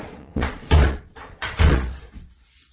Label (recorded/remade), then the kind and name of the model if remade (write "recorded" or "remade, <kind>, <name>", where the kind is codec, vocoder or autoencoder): remade, vocoder, Vocos